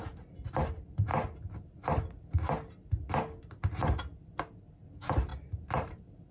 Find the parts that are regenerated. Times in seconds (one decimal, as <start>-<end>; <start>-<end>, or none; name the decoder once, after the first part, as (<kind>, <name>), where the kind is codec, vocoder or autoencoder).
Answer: 0.0-1.1 (vocoder, BigVGAN v2); 4.7-6.3